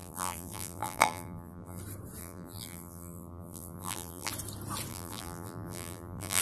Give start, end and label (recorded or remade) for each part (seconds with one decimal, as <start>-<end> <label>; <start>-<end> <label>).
0.0-1.8 remade; 1.8-2.2 recorded; 2.2-4.3 remade; 4.3-4.9 recorded; 4.9-6.4 remade